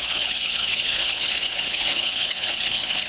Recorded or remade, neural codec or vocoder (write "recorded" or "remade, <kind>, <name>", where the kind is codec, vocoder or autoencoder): remade, codec, HILCodec